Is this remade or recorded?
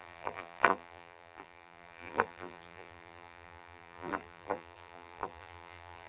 remade